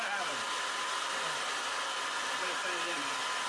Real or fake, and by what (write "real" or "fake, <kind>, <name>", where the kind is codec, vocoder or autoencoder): real